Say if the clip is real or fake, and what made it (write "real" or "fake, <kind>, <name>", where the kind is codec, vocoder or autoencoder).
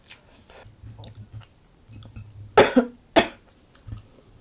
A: real